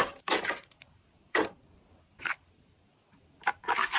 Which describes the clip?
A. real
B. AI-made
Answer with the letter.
B